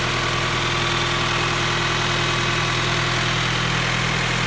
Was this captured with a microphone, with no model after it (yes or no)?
yes